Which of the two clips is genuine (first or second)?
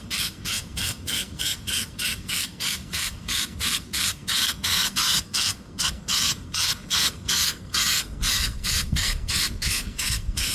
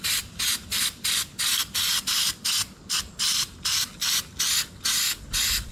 second